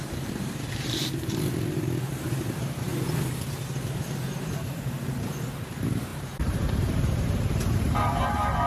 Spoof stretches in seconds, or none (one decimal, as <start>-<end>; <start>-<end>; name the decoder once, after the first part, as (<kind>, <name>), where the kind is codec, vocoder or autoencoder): 0.0-8.7 (vocoder, BigVGAN v2)